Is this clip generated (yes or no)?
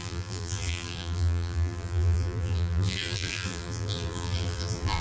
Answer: yes